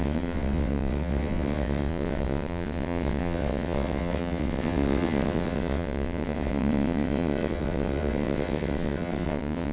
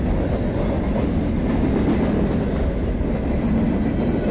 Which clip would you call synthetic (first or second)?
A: first